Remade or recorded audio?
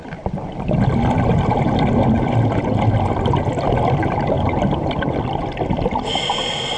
recorded